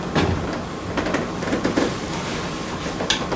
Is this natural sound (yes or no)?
yes